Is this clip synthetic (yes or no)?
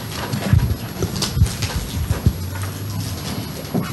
no